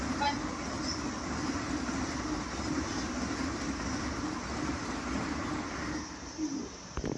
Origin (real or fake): real